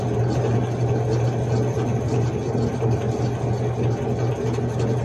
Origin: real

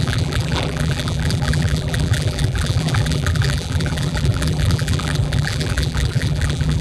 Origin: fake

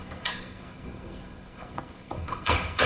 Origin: fake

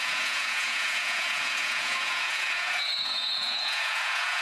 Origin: fake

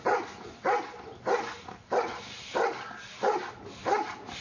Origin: real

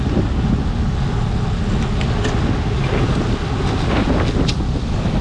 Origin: real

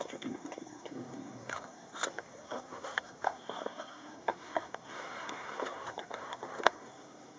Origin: fake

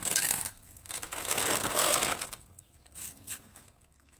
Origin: fake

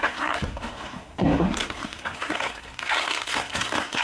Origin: fake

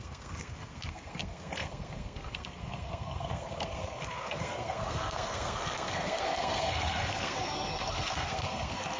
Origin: fake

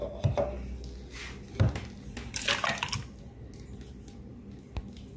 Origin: real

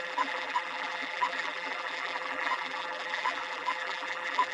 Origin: fake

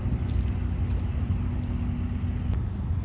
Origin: real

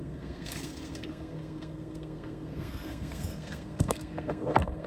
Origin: fake